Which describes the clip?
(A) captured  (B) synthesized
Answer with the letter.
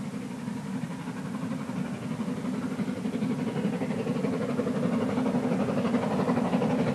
A